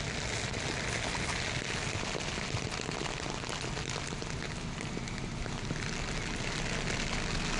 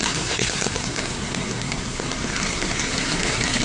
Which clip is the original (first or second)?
first